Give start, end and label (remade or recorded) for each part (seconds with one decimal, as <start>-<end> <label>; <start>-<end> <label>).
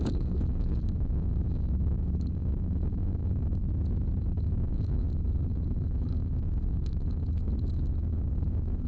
0.0-3.6 remade; 3.6-4.2 recorded; 4.2-8.9 remade